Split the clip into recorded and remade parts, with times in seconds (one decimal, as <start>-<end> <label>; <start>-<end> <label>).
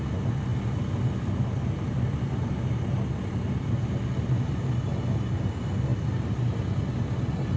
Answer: 0.0-7.6 recorded